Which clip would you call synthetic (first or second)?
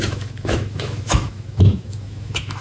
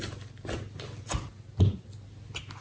first